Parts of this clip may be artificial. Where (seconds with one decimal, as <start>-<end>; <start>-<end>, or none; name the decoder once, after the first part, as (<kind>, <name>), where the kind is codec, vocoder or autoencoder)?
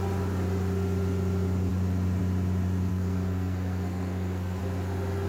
2.9-4.6 (codec, SNAC)